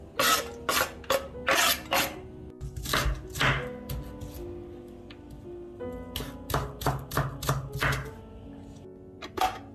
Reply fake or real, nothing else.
real